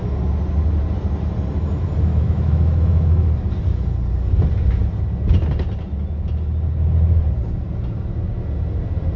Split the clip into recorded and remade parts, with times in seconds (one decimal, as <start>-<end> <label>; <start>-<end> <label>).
0.0-2.1 recorded; 2.1-3.3 remade; 3.3-9.2 recorded